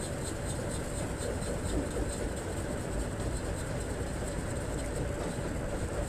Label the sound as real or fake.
real